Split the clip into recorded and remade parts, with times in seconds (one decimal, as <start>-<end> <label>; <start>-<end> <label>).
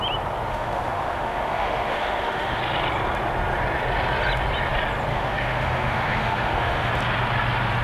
0.0-0.5 recorded; 0.5-2.6 remade; 2.6-5.1 recorded; 5.1-6.9 remade; 6.9-7.8 recorded